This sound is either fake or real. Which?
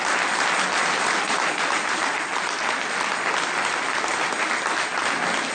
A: real